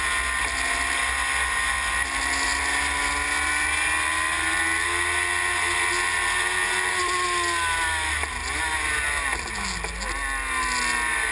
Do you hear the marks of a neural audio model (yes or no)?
no